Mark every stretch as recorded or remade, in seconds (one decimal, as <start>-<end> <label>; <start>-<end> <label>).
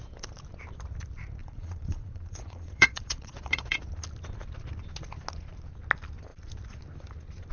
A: 0.0-1.4 recorded; 1.4-3.8 remade; 3.8-7.5 recorded